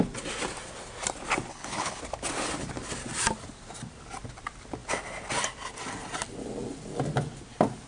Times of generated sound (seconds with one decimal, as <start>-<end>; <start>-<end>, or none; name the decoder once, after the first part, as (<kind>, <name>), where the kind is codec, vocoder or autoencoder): 1.5-2.0 (codec, HILCodec)